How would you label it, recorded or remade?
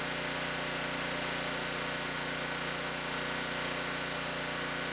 recorded